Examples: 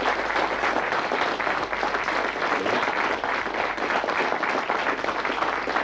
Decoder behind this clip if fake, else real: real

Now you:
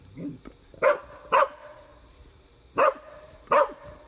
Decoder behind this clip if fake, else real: fake, vocoder, BigVGAN v2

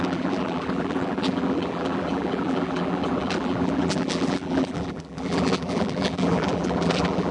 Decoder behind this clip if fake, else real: fake, vocoder, BigVGAN v2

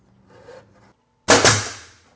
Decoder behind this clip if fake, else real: real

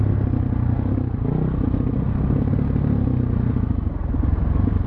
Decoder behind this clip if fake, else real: real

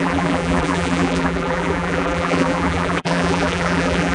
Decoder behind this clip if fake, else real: fake, vocoder, BigVGAN v2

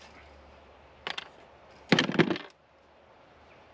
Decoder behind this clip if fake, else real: real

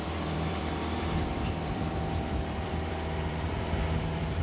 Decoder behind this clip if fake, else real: fake, vocoder, BigVGAN v2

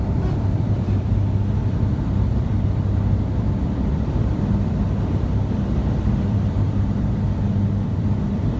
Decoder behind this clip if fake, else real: fake, vocoder, BigVGAN v2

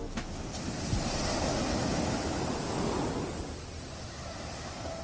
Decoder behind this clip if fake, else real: real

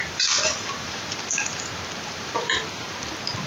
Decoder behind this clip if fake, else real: fake, vocoder, BigVGAN v2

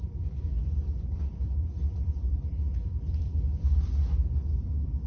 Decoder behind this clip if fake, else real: fake, vocoder, BigVGAN v2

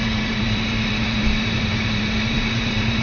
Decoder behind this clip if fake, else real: fake, vocoder, BigVGAN v2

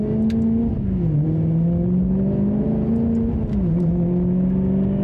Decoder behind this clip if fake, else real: real